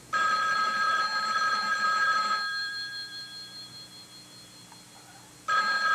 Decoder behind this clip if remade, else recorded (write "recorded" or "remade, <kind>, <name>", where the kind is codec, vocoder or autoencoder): recorded